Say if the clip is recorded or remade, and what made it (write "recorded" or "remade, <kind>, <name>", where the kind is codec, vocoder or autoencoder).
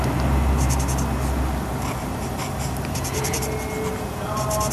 recorded